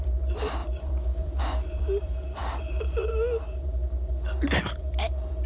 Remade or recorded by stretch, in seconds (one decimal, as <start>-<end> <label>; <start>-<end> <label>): 0.0-2.4 remade; 2.4-4.8 recorded; 4.8-5.5 remade